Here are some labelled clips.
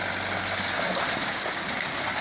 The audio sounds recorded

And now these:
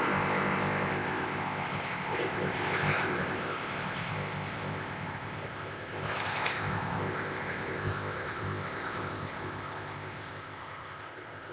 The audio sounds remade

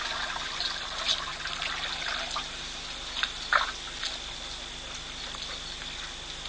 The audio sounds recorded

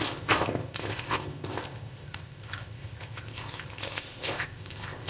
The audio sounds remade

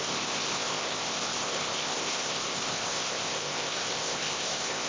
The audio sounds remade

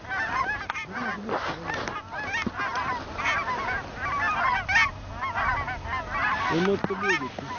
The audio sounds recorded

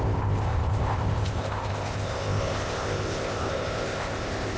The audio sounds remade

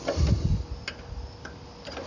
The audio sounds recorded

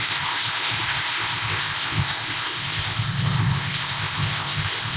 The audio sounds remade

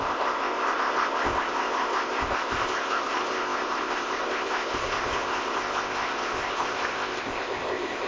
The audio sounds remade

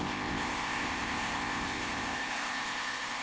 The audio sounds remade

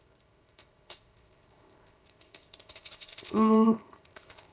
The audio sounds remade